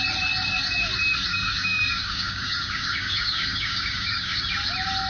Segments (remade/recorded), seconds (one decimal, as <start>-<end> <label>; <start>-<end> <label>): 0.0-1.3 recorded; 1.3-4.4 remade; 4.4-5.1 recorded